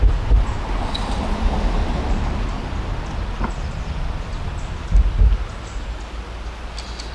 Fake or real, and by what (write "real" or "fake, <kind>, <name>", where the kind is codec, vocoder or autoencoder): real